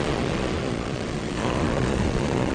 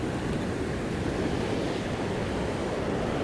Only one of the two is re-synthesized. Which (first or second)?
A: first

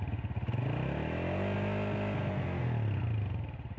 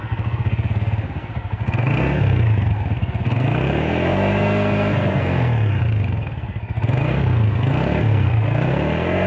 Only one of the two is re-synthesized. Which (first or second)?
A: second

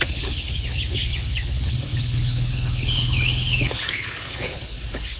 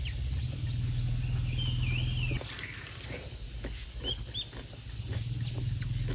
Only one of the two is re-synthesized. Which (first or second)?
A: first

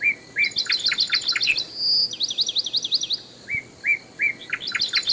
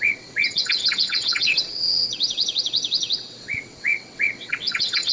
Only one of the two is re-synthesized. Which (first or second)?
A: second